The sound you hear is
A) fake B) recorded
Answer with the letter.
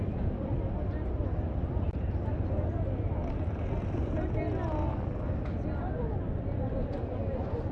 B